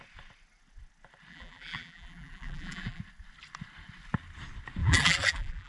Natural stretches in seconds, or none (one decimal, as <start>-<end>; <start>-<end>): 0.0-1.3; 3.0-4.8